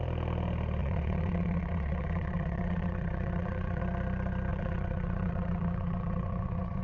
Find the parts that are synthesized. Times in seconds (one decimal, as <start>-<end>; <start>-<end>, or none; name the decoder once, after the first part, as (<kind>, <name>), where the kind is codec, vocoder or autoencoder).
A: 0.8-3.8 (vocoder, WaveNeXt); 4.5-6.8

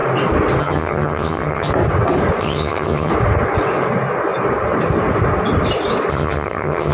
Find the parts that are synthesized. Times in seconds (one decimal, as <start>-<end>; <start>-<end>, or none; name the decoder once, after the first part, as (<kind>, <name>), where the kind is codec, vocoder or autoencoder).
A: 0.6-1.7 (vocoder, HiFi-GAN); 2.4-3.1; 6.1-6.9

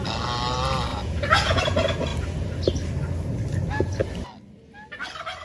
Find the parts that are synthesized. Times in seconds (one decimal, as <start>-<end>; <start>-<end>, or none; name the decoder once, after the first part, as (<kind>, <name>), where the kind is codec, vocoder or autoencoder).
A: 0.9-1.6 (vocoder, Vocos)

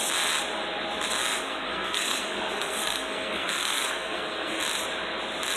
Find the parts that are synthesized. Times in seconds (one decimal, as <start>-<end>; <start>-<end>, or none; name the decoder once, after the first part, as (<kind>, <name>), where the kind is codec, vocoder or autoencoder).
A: 1.2-4.6 (codec, SNAC)

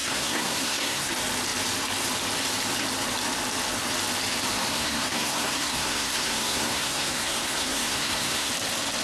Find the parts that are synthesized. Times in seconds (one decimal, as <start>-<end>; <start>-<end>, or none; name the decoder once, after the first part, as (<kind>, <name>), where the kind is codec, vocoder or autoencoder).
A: 0.0-1.1 (codec, SNAC); 4.7-8.5

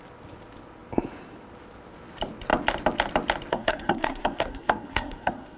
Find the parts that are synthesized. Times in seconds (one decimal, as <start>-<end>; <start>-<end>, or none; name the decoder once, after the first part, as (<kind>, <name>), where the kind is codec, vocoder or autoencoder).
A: 3.5-5.6 (codec, SNAC)

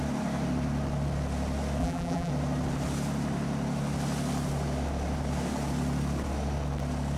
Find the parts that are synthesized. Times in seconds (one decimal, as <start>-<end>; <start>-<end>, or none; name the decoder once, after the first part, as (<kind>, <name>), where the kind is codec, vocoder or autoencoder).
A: 1.8-2.3 (vocoder, BigVGAN v2)